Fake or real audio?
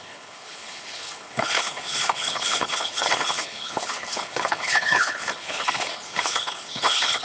fake